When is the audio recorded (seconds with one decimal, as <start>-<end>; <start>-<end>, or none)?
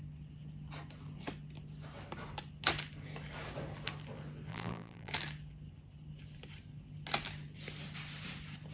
0.0-4.5; 5.1-8.7